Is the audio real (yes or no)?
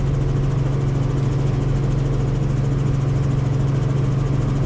yes